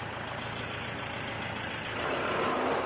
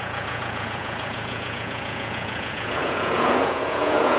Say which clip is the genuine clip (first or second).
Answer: first